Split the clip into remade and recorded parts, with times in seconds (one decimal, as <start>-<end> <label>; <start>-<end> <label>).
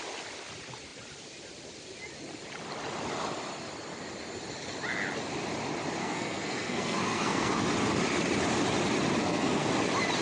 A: 0.0-6.0 recorded; 6.0-7.6 remade; 7.6-9.2 recorded; 9.2-9.7 remade; 9.7-10.2 recorded